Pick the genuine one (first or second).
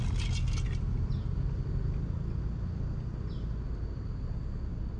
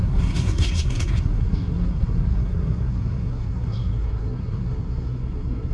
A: first